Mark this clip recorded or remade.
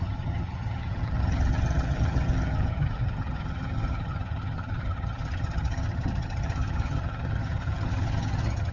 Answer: remade